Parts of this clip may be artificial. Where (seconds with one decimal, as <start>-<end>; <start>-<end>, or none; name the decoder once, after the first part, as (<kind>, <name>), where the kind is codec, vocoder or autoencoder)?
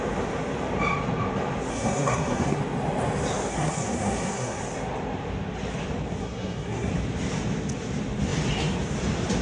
1.7-2.6 (codec, SNAC); 3.5-4.6; 6.2-6.9